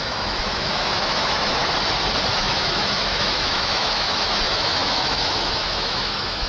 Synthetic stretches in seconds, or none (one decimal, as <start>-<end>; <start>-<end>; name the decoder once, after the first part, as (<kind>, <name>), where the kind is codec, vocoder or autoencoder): 0.0-1.6 (autoencoder, DAC-VAE); 2.3-6.5